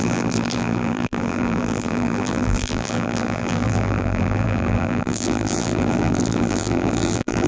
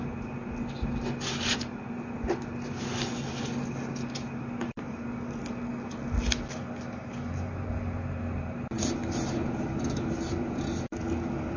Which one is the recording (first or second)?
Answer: second